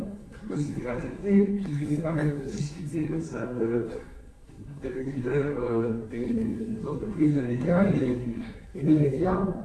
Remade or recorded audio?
remade